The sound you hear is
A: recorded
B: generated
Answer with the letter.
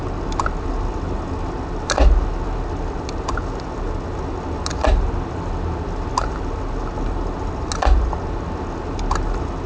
A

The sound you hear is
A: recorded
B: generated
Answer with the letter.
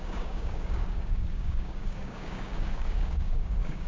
B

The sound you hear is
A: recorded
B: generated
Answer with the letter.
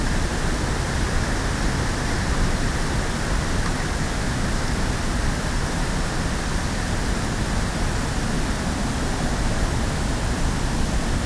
A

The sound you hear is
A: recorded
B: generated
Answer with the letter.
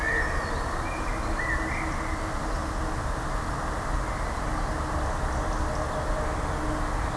A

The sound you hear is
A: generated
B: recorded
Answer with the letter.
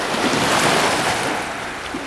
B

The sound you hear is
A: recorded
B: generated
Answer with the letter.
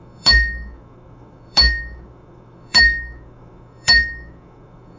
B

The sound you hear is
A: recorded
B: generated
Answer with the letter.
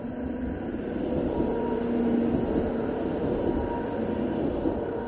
A